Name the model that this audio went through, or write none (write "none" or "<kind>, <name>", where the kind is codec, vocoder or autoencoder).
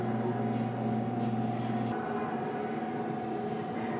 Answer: none